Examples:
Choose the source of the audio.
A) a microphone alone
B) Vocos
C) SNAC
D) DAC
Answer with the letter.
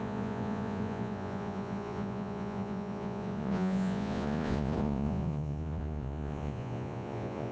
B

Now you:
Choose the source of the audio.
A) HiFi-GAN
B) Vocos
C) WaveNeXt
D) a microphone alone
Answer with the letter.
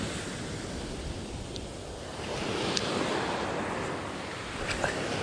D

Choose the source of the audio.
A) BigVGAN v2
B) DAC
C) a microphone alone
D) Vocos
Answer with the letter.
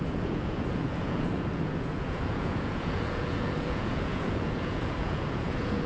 D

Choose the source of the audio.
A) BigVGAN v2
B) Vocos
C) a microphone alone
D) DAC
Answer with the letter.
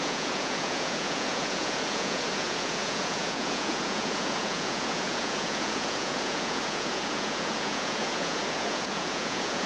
B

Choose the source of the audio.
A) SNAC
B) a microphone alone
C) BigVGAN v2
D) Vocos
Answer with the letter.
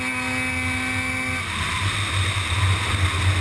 B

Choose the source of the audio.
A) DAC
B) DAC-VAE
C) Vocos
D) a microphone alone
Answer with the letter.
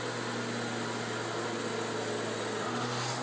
D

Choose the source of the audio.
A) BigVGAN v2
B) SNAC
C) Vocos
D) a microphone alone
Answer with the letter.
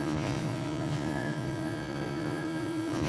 C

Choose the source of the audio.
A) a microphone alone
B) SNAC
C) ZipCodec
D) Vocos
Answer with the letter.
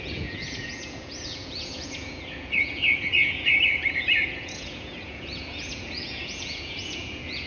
D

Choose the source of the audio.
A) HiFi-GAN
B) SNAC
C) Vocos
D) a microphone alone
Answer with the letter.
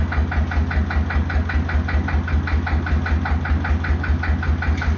D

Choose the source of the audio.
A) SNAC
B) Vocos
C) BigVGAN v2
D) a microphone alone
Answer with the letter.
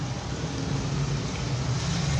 D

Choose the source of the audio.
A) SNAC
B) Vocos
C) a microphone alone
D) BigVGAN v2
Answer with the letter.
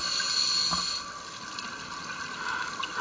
C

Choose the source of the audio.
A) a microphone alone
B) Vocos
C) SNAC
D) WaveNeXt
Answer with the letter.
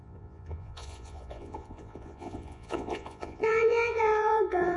B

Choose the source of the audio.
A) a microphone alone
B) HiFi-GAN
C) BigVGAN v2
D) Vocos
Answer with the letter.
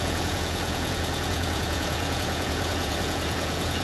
D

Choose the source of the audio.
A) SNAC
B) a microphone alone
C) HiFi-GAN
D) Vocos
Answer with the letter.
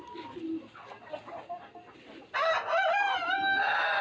B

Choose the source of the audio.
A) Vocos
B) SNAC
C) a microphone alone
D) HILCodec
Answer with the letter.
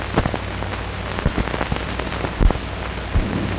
C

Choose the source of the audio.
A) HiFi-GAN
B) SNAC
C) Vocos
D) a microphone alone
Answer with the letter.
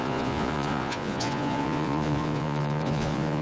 C